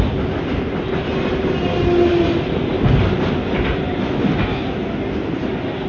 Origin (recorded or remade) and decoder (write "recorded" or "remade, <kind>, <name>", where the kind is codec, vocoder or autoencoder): recorded